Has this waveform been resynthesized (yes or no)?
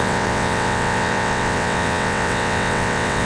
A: yes